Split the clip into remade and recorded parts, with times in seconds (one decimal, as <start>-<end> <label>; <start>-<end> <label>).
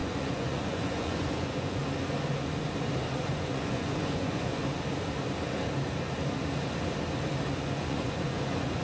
0.0-1.8 remade; 1.8-3.1 recorded; 3.1-4.6 remade; 4.6-7.6 recorded; 7.6-8.8 remade